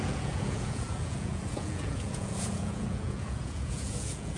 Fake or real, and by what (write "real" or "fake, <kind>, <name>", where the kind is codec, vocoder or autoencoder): fake, vocoder, Vocos